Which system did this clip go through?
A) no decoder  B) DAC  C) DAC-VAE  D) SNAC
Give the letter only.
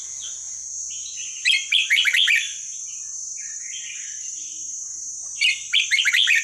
A